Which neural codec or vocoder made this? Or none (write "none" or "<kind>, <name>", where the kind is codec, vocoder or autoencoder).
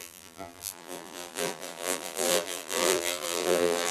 vocoder, BigVGAN v2